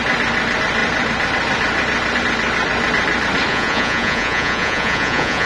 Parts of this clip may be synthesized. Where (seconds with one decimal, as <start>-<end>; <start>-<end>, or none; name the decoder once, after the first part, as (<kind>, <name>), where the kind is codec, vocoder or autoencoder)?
3.5-5.5 (vocoder, Vocos)